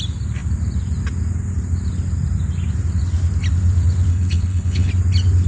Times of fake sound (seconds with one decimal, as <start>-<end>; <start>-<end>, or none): 4.1-4.9